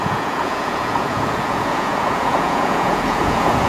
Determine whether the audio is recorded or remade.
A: remade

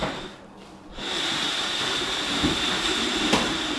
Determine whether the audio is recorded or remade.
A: remade